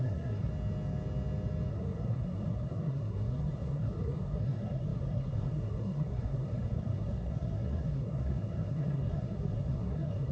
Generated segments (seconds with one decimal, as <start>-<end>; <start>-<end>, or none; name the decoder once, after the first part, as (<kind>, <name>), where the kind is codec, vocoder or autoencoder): 0.0-0.5 (codec, SNAC); 1.7-10.3